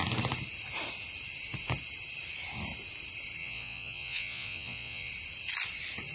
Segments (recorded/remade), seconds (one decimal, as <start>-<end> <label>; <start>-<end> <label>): 0.0-3.4 recorded; 3.4-5.1 remade; 5.1-6.1 recorded